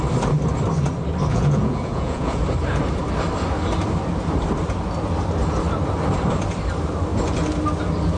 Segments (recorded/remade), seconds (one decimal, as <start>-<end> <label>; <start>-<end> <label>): 0.0-1.3 recorded; 1.3-2.4 remade; 2.4-8.2 recorded